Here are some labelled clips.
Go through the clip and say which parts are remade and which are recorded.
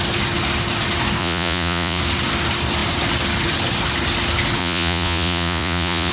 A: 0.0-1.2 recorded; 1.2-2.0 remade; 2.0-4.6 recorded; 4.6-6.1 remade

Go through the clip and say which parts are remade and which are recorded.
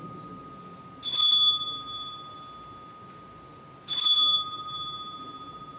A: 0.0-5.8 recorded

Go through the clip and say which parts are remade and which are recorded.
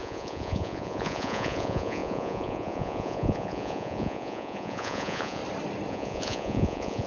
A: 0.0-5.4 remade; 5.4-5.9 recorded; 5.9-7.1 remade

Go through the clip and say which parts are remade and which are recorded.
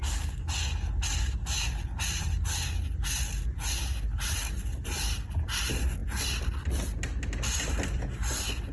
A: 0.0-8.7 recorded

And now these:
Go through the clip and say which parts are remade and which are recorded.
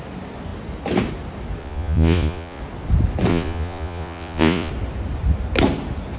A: 0.0-1.6 recorded; 1.6-2.6 remade; 2.6-3.3 recorded; 3.3-4.7 remade; 4.7-6.2 recorded